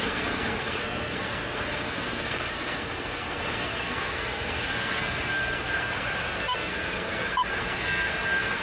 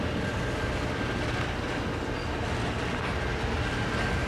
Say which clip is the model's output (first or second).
first